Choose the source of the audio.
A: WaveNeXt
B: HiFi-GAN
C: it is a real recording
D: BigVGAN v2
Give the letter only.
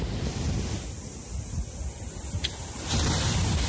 C